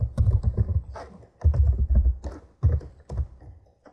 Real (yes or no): yes